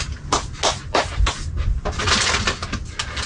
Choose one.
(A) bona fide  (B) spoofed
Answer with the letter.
A